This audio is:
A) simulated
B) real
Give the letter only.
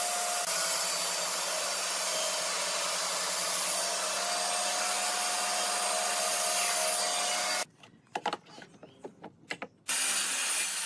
B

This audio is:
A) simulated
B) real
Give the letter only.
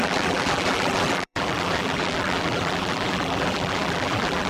A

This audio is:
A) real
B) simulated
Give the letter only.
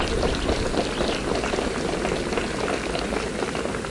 B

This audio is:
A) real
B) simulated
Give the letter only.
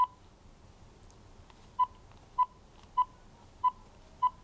A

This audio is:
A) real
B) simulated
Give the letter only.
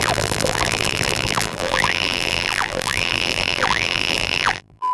B